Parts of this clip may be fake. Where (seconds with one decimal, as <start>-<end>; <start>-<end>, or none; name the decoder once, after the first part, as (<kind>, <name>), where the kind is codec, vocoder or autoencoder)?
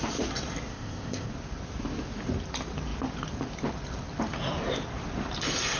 0.7-1.3 (codec, ZipCodec)